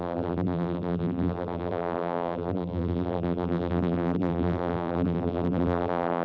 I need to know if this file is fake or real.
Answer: fake